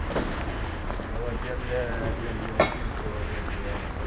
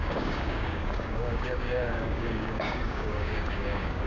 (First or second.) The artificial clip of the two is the second